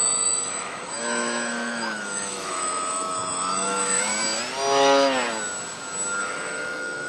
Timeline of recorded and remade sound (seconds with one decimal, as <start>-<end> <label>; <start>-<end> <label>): 0.0-4.1 remade; 4.1-6.2 recorded; 6.2-7.1 remade